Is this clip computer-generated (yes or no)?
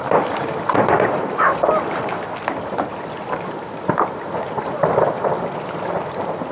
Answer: yes